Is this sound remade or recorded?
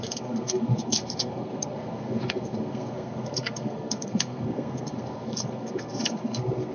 remade